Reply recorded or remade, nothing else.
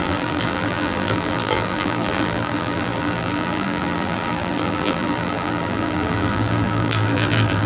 remade